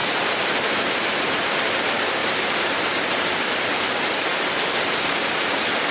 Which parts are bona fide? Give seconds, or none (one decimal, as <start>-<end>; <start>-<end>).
0.0-2.2; 3.5-5.9